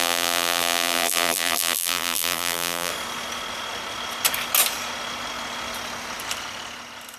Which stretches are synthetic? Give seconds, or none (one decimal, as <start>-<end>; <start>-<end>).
0.0-2.9